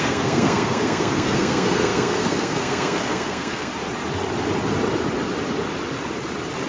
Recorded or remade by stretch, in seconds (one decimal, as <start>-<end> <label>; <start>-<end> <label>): 0.0-3.7 remade; 3.7-6.7 recorded